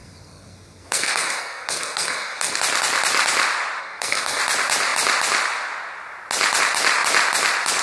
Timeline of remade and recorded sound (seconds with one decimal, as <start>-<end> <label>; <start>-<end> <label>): 0.0-2.6 remade; 2.6-3.8 recorded; 3.8-4.4 remade; 4.4-7.8 recorded